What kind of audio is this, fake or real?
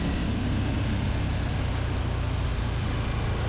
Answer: real